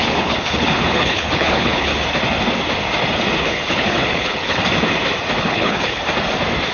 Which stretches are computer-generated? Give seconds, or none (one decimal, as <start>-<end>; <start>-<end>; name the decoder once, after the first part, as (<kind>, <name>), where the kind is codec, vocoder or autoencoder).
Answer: 0.0-1.9 (codec, HILCodec); 3.4-4.6; 5.4-6.0